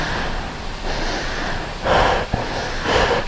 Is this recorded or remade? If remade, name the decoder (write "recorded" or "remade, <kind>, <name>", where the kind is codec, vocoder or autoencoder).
recorded